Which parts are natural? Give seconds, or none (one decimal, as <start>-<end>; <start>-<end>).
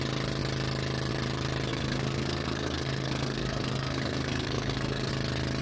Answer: 0.0-1.7; 5.1-5.6